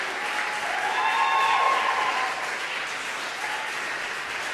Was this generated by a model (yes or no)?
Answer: no